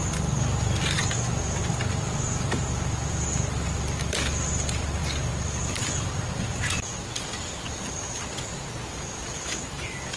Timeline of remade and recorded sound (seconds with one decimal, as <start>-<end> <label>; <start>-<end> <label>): 0.0-10.2 recorded